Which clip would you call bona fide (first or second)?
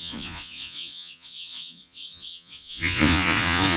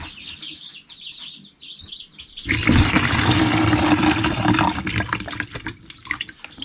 second